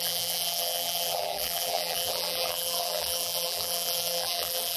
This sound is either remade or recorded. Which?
remade